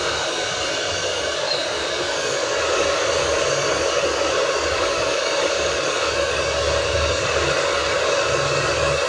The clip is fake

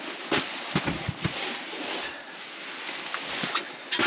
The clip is real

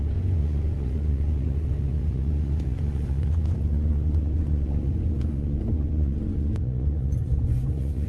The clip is fake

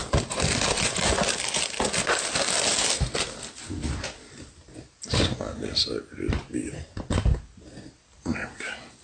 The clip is real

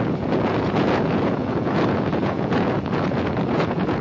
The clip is fake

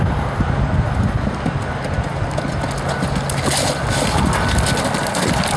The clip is real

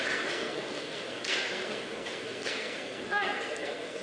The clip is fake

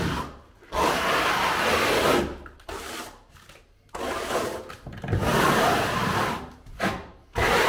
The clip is real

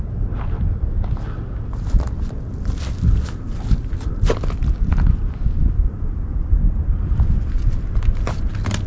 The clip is real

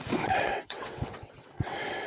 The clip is fake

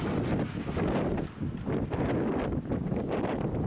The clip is real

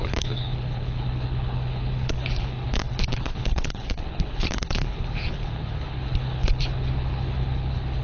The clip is fake